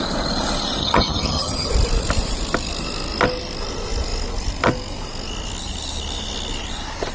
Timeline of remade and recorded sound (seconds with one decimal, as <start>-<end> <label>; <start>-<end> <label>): 0.0-0.8 recorded; 0.8-1.7 remade; 1.7-7.1 recorded